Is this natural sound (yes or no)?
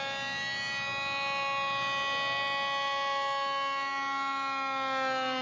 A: yes